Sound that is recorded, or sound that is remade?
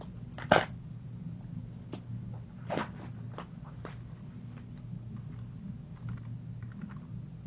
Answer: recorded